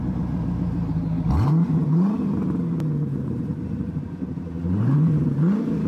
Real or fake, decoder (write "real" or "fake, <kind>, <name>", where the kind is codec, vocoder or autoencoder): fake, vocoder, BigVGAN v2